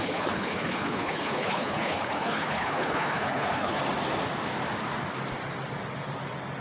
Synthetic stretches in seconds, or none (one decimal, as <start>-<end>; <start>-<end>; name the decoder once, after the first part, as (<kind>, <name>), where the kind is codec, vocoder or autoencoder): 0.0-3.8 (codec, HILCodec)